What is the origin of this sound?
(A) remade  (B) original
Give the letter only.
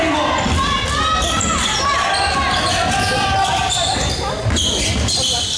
B